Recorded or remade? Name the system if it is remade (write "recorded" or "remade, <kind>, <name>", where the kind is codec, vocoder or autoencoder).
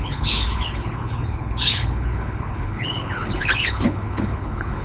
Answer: remade, codec, HILCodec